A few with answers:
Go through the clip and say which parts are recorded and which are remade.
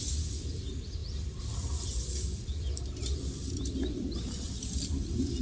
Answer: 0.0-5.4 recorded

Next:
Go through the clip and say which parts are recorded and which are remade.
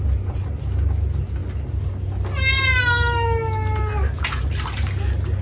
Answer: 0.0-5.4 recorded